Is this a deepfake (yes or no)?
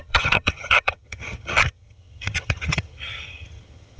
yes